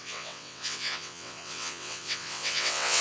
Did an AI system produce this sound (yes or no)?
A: yes